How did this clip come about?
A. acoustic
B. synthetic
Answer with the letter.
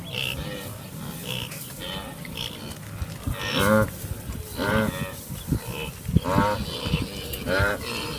A